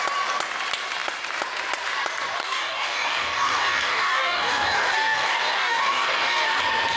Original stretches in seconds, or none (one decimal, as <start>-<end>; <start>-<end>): 0.0-2.4; 6.6-7.0